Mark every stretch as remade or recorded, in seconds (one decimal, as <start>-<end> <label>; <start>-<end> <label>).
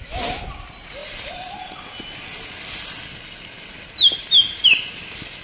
0.0-5.4 recorded